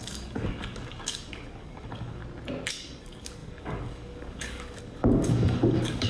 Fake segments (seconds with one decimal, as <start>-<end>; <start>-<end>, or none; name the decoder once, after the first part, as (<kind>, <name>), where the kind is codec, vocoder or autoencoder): 0.0-2.2 (codec, DAC); 2.7-6.1